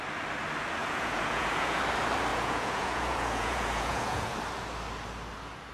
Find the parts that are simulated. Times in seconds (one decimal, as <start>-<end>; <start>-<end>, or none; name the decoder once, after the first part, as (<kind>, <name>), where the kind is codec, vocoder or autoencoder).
0.8-1.8 (vocoder, Vocos); 2.3-4.4